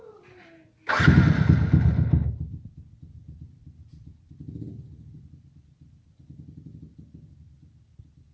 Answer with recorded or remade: recorded